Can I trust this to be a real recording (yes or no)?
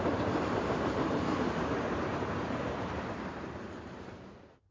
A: no